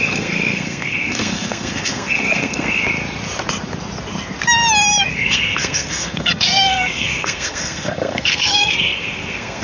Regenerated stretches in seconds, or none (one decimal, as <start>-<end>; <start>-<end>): 0.0-2.8; 5.1-9.6

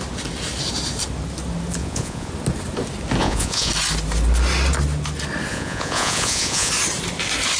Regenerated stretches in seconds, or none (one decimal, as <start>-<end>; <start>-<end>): 1.8-2.3; 3.2-3.7; 5.5-6.7

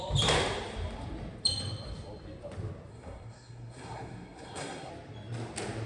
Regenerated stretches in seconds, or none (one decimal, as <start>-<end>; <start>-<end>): 2.9-4.9

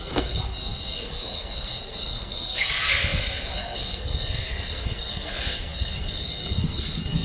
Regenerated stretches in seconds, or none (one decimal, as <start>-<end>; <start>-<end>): 0.0-7.2

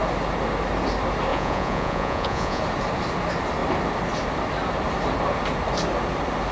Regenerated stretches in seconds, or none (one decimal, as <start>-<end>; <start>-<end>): 1.3-2.6

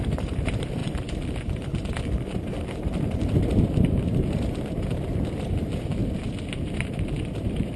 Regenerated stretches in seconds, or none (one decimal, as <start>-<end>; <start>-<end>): 0.0-6.0; 6.8-7.8